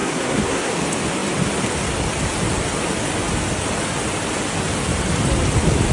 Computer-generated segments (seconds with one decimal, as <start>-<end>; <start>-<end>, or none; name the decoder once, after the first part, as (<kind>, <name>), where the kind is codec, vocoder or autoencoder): 0.0-0.7 (codec, SNAC)